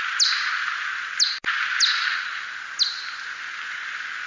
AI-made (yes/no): no